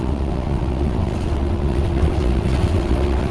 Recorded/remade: remade